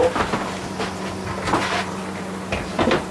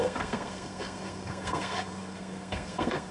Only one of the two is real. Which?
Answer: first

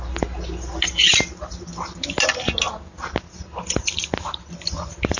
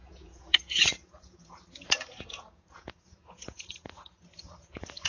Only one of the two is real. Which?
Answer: first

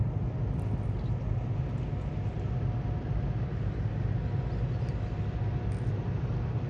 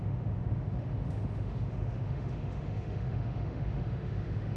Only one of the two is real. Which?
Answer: first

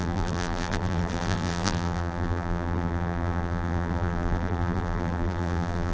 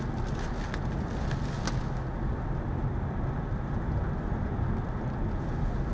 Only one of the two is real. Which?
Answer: second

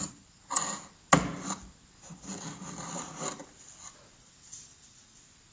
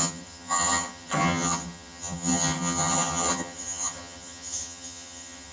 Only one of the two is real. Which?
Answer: first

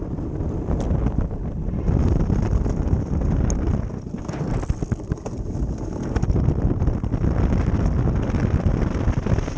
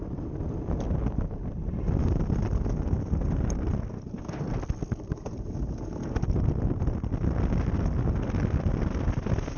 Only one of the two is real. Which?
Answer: second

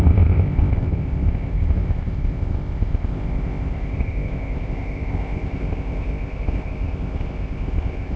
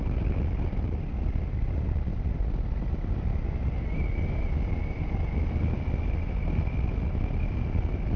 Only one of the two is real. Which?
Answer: second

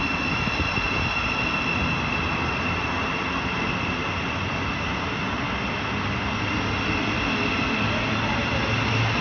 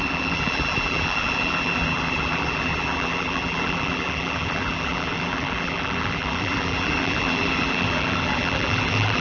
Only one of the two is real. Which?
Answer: first